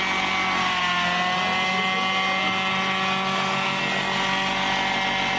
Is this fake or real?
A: real